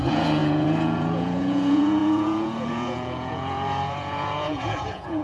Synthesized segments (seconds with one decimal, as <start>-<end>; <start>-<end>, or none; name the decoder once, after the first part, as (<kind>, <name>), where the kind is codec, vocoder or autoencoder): 0.0-5.2 (vocoder, Vocos)